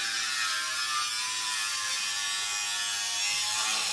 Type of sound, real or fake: real